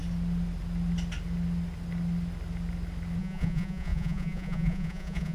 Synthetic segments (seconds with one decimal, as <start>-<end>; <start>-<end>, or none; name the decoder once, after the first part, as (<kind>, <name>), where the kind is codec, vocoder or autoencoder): 3.2-5.3 (vocoder, Vocos)